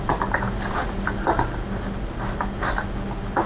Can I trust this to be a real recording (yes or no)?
yes